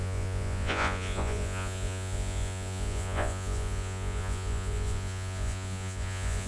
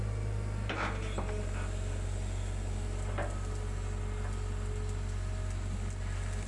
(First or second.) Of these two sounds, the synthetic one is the first